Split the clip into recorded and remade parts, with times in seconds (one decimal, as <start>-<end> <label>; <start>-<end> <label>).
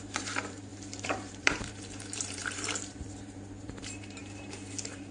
0.0-5.1 remade